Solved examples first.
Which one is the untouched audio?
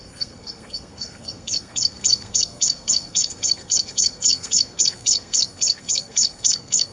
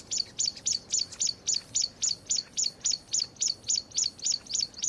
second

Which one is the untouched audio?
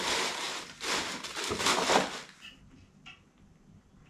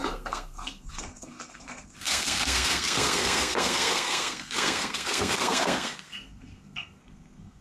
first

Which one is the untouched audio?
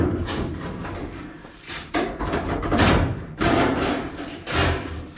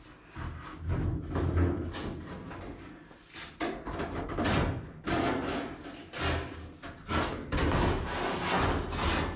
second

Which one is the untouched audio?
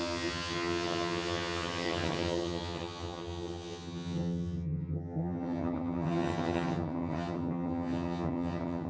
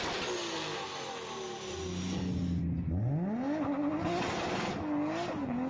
second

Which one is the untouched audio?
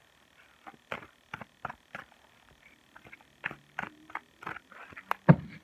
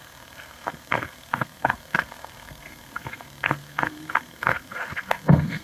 first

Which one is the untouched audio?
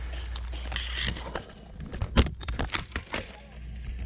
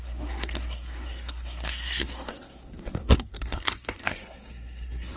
first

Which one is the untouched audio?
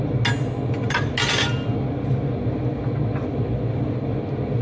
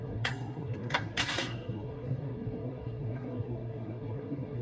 first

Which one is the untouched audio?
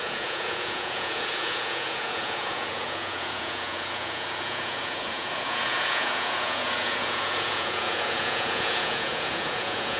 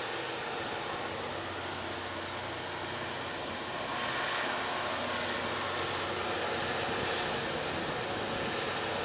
second